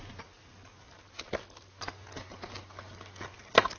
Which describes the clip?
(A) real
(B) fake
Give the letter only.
A